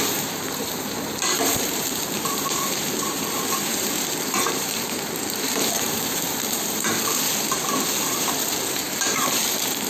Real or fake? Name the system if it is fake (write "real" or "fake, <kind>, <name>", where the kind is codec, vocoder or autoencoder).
fake, vocoder, BigVGAN v2